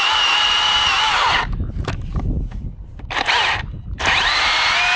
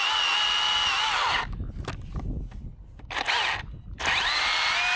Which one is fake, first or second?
first